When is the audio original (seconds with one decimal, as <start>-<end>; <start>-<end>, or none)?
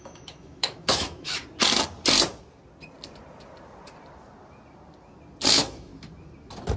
1.4-5.5; 5.9-6.8